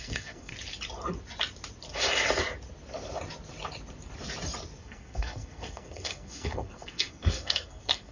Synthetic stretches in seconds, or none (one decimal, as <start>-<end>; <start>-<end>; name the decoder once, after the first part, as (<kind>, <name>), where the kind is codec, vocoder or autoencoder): 0.0-0.5 (codec, SNAC); 4.8-8.1